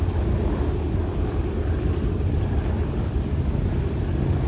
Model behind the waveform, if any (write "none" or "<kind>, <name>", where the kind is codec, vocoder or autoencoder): none